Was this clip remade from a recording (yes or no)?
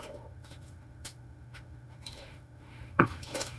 yes